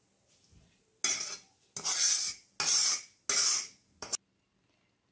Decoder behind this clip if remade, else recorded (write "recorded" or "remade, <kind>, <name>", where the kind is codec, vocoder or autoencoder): recorded